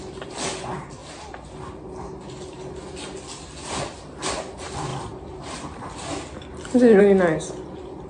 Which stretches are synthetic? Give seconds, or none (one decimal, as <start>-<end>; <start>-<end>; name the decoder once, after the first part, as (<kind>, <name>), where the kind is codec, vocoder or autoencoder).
none

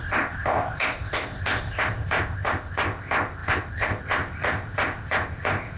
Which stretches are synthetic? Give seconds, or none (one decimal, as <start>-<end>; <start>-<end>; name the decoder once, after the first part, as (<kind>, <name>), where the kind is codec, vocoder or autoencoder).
0.0-5.8 (codec, ZipCodec)

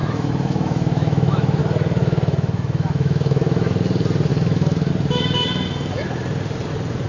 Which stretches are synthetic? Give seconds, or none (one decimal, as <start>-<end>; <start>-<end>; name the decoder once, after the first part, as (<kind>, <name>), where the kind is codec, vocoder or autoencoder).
0.0-1.6 (autoencoder, DAC-VAE); 2.0-3.7; 4.3-4.9

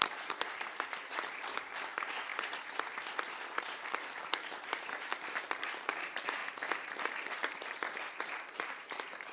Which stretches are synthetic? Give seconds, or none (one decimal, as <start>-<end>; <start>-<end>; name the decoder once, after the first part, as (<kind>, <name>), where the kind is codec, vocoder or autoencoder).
0.0-2.3 (vocoder, BigVGAN v2); 3.6-6.4; 7.0-7.4; 8.2-9.3

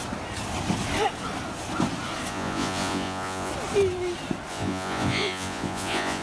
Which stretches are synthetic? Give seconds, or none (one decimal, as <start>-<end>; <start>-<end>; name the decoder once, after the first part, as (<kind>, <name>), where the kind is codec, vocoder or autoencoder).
2.3-3.5 (vocoder, Vocos); 4.5-6.2

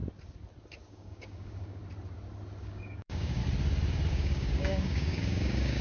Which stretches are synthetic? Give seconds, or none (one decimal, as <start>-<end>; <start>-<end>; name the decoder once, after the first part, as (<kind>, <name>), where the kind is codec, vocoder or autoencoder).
0.9-1.8 (codec, DAC); 2.6-3.4; 4.1-5.8

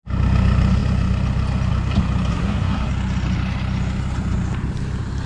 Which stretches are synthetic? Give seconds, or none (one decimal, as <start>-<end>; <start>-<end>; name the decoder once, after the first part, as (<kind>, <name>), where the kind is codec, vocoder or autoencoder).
2.3-2.9 (codec, SNAC)